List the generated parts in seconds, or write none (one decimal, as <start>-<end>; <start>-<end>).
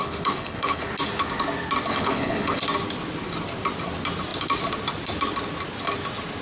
0.0-0.9; 1.9-2.6